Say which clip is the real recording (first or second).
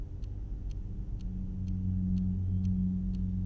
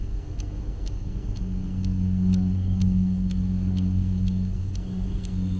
first